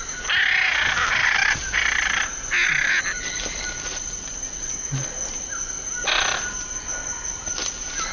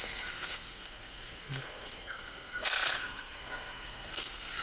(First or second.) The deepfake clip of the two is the second